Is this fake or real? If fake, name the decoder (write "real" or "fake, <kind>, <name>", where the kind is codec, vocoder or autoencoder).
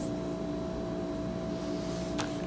real